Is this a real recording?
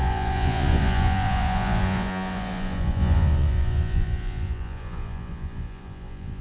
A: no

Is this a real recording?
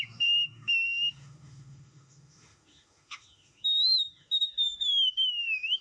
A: no